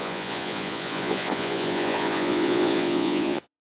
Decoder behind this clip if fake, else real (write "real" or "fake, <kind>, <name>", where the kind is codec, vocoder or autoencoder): fake, vocoder, Vocos